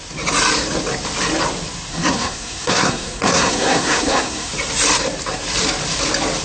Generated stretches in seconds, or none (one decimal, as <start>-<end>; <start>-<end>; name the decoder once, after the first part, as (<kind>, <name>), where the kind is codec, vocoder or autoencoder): 1.9-4.5 (codec, SNAC)